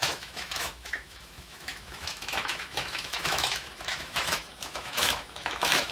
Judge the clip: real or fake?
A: fake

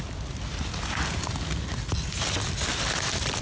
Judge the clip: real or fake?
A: real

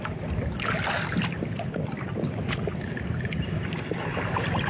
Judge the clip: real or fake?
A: real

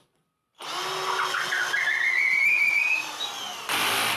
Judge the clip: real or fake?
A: real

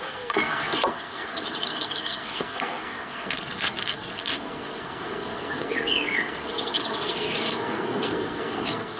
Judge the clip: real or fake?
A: fake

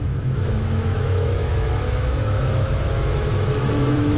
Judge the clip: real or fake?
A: fake